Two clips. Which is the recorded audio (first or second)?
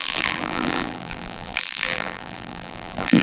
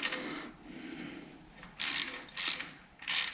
second